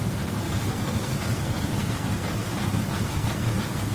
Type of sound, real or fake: fake